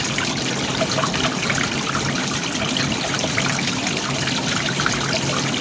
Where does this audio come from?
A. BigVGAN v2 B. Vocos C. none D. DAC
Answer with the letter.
C